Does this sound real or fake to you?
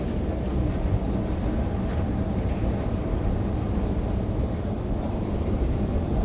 real